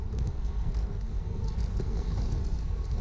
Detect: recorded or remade remade